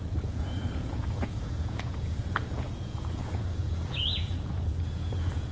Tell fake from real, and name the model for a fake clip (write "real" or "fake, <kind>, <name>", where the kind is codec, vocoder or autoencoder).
fake, vocoder, Vocos